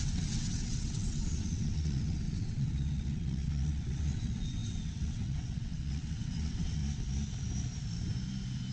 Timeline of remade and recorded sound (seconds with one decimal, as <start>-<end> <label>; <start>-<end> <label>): 0.0-6.8 remade; 6.8-8.7 recorded